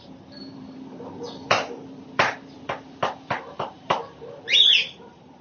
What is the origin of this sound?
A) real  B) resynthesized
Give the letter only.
B